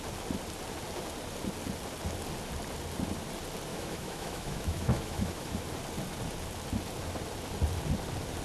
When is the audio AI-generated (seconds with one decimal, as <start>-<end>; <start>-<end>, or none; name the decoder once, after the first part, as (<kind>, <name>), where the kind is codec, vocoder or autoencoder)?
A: 3.7-5.6 (autoencoder, DAC-VAE)